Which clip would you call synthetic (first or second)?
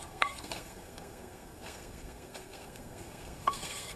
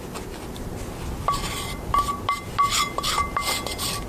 first